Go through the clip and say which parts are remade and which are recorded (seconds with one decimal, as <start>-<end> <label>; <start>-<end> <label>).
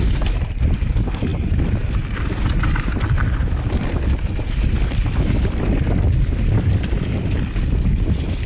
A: 0.0-8.5 recorded